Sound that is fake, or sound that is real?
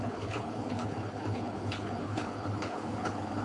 fake